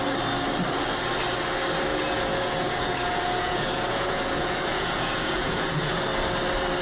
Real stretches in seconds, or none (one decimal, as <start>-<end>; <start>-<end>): 0.0-1.9; 6.0-6.8